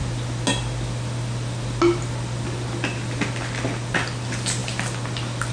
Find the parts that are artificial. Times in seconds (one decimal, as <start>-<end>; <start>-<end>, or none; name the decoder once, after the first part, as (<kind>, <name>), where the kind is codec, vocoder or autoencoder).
none